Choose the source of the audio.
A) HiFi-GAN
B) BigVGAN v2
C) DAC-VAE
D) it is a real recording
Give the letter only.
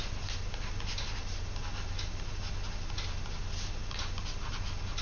D